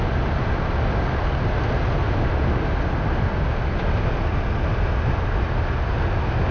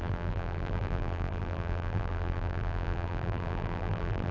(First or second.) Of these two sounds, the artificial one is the second